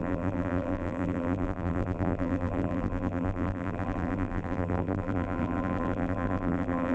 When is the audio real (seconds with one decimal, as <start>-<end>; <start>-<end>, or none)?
none